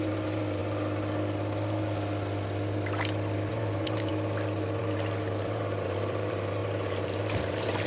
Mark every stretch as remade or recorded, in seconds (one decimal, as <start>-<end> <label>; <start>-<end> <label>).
0.0-0.6 remade; 0.6-3.5 recorded; 3.5-4.1 remade; 4.1-4.8 recorded; 4.8-7.9 remade